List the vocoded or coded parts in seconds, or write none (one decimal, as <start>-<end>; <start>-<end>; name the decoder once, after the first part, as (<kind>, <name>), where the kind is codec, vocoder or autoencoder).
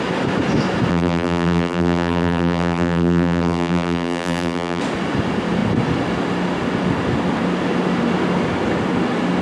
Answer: 0.9-4.8 (vocoder, BigVGAN v2)